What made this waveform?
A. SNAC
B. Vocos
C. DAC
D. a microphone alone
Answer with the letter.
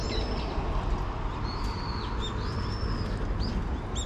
D